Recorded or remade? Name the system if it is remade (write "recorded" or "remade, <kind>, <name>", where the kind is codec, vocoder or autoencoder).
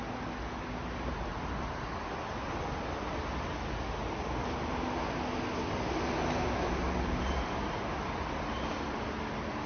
recorded